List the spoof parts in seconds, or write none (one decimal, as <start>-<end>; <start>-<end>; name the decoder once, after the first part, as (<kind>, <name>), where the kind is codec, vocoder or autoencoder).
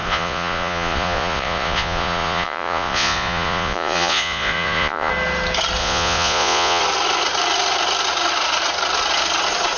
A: 0.0-5.1 (vocoder, Vocos); 5.8-6.8